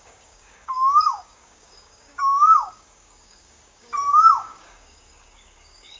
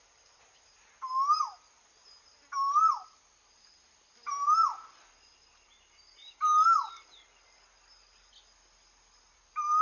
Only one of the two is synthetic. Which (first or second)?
first